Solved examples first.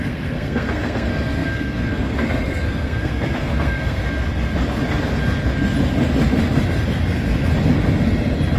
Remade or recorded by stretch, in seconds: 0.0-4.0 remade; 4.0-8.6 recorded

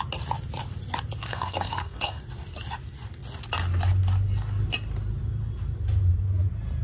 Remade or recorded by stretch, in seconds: 0.0-1.3 recorded; 1.3-2.2 remade; 2.2-6.8 recorded

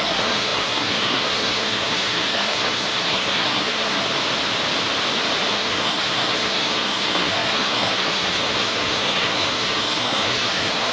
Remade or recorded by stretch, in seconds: 0.0-4.0 remade; 4.0-5.5 recorded; 5.5-10.9 remade

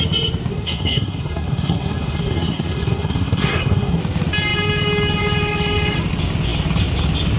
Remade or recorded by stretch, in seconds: 0.0-0.5 recorded; 0.5-4.0 remade; 4.0-7.4 recorded

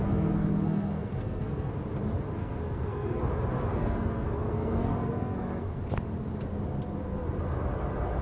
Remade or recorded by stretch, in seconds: 0.0-1.7 remade; 1.7-2.4 recorded; 2.4-3.2 remade; 3.2-3.7 recorded; 3.7-5.8 remade; 5.8-8.2 recorded

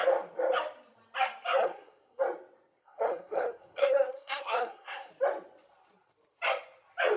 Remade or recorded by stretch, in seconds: 0.0-1.6 recorded; 1.6-2.2 remade; 2.2-2.8 recorded; 2.8-5.1 remade; 5.1-7.2 recorded

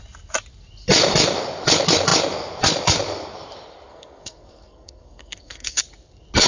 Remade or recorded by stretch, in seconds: 0.0-3.9 recorded; 3.9-5.8 remade; 5.8-6.5 recorded

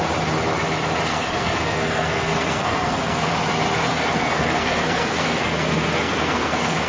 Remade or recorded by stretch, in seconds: 0.0-1.1 recorded; 1.1-3.3 remade; 3.3-3.9 recorded; 3.9-6.9 remade